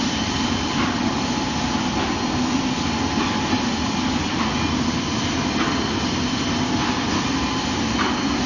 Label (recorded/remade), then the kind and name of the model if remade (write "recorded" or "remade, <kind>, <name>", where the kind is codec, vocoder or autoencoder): recorded